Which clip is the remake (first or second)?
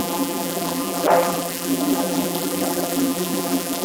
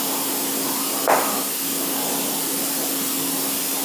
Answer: first